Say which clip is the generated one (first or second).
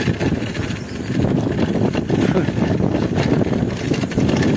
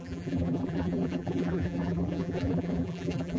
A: second